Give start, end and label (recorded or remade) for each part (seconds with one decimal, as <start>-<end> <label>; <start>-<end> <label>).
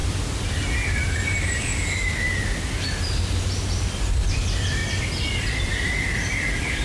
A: 0.0-1.0 recorded; 1.0-1.7 remade; 1.7-3.4 recorded; 3.4-4.8 remade; 4.8-5.6 recorded; 5.6-6.8 remade